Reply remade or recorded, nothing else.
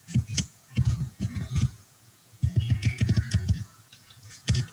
remade